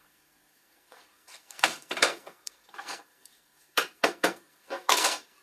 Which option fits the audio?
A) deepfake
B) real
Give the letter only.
A